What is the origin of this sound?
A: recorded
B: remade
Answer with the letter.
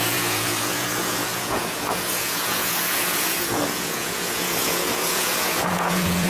B